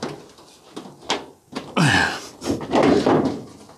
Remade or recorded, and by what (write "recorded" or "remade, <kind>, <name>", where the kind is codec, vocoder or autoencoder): recorded